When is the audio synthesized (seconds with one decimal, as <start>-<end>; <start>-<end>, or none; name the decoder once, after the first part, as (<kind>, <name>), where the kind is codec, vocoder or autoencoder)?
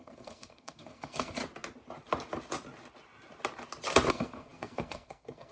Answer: 0.0-1.4 (codec, SNAC); 4.1-5.5